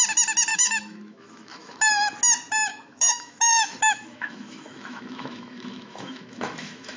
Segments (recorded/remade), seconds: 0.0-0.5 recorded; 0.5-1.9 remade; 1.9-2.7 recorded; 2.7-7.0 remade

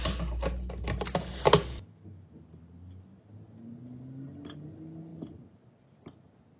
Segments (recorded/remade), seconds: 0.0-6.6 recorded